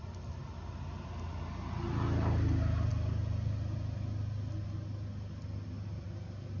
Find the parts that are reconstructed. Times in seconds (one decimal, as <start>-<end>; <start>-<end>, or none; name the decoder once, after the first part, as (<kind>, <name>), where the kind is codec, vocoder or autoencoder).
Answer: none